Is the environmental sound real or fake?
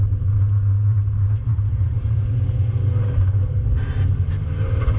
fake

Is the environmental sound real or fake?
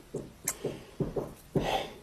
real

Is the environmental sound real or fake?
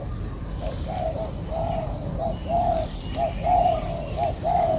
fake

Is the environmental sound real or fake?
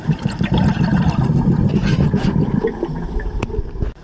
real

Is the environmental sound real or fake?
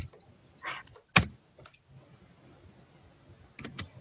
real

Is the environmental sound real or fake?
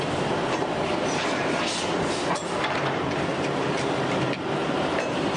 real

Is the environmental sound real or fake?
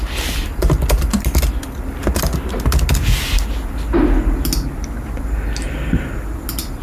real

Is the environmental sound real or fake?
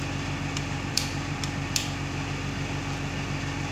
fake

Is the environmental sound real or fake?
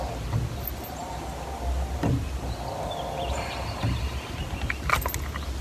real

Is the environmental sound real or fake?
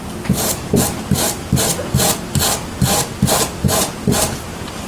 fake